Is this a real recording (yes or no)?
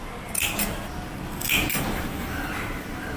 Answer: yes